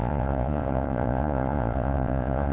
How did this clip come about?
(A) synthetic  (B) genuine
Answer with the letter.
A